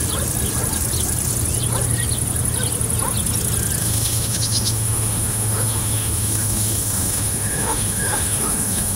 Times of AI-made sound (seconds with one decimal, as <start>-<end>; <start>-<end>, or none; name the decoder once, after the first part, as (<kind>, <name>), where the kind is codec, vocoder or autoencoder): 3.8-9.0 (autoencoder, DAC-VAE)